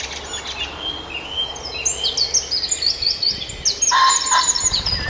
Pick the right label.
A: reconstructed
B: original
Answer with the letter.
B